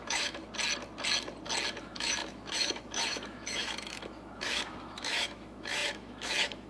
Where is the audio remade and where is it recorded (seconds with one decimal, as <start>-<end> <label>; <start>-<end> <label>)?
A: 0.0-0.4 remade; 0.4-1.8 recorded; 1.8-6.7 remade